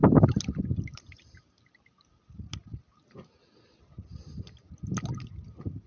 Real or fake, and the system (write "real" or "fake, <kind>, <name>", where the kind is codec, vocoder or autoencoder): real